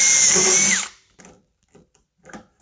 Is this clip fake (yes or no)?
no